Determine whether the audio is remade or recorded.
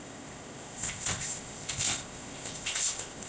remade